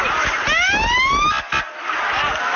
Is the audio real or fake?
real